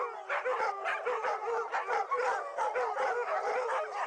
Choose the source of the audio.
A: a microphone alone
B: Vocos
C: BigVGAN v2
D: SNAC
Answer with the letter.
A